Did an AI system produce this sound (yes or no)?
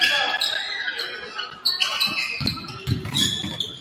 no